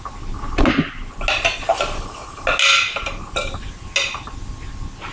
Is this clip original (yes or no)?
yes